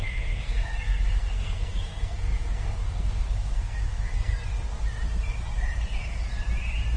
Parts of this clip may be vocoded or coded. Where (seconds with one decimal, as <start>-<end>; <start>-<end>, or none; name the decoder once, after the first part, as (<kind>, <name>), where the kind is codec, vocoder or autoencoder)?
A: 0.0-4.3 (codec, SNAC)